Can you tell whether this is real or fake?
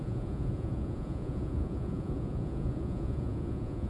fake